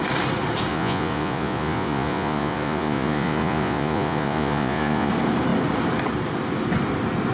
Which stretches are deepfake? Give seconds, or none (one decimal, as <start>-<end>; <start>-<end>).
0.7-5.1